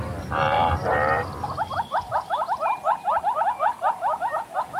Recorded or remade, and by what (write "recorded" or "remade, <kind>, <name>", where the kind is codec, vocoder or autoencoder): remade, vocoder, BigVGAN v2